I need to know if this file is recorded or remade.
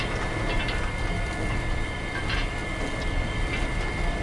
recorded